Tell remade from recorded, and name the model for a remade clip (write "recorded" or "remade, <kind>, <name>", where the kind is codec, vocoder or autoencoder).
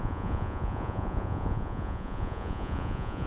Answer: remade, vocoder, Vocos